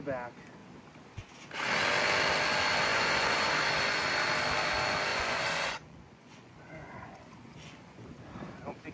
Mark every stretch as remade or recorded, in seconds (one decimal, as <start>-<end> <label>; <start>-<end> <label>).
0.0-2.9 recorded; 2.9-3.5 remade; 3.5-5.1 recorded; 5.1-8.2 remade; 8.2-8.9 recorded